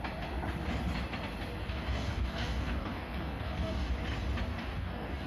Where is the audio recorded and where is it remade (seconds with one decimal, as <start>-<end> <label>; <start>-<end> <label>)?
0.0-1.6 recorded; 1.6-3.9 remade; 3.9-4.5 recorded; 4.5-5.3 remade